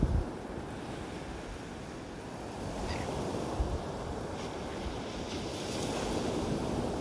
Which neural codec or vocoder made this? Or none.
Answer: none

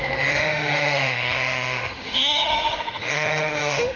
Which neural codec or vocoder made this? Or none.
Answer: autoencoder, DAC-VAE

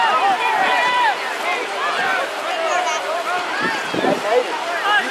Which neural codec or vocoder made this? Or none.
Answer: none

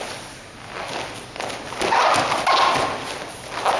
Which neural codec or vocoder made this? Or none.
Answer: none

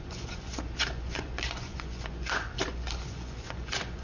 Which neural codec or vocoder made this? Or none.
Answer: vocoder, Vocos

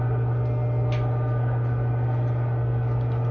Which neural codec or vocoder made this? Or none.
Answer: none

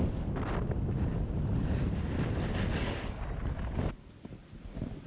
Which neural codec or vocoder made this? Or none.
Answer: none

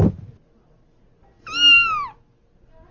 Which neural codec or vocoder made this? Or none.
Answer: none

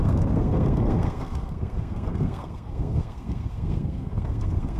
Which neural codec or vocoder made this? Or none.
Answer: codec, SNAC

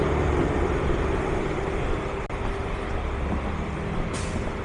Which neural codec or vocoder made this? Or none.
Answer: none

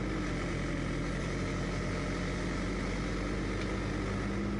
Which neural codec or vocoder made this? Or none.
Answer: none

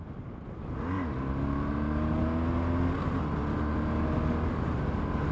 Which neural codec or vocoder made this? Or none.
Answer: none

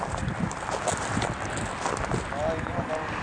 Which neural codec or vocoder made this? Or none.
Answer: none